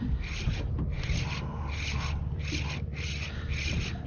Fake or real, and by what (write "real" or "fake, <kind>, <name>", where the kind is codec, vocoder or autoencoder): real